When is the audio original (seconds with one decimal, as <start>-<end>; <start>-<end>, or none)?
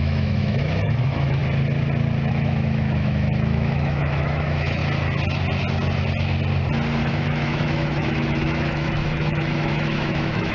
1.4-2.3; 4.8-7.1